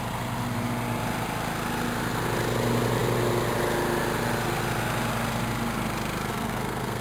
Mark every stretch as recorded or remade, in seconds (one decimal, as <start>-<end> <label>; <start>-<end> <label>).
0.0-6.3 recorded; 6.3-7.0 remade